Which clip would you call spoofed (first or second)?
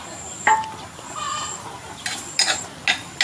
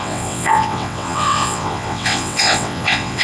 second